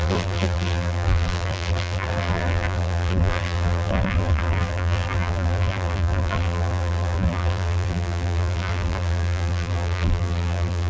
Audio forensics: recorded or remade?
remade